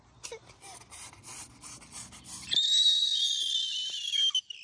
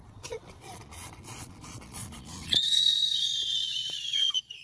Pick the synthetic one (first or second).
second